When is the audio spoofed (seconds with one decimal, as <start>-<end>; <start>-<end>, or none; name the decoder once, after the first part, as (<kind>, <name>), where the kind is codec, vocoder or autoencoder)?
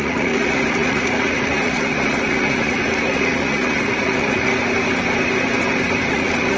0.0-4.5 (vocoder, Vocos); 6.1-6.6